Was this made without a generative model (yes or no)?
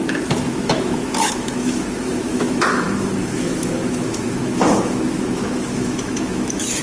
no